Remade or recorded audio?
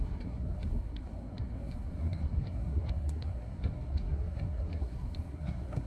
remade